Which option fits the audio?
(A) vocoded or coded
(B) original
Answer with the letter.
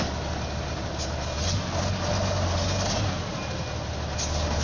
B